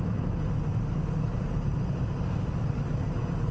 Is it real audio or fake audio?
real